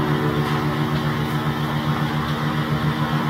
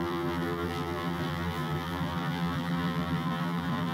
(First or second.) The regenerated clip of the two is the second